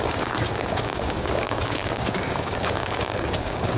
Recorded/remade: remade